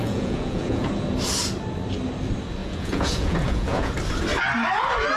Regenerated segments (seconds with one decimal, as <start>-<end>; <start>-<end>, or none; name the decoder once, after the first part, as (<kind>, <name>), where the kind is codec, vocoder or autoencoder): 0.0-0.9 (vocoder, Vocos); 2.6-3.9